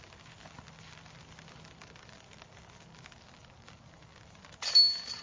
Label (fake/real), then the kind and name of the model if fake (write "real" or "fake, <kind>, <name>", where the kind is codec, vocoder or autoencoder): real